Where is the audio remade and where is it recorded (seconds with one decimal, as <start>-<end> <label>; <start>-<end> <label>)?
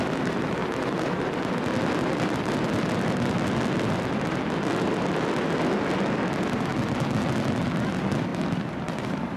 0.0-9.4 recorded